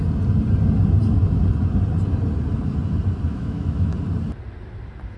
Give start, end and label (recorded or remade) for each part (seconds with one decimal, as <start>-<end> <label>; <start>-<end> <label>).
0.0-3.3 recorded; 3.3-3.9 remade; 3.9-5.2 recorded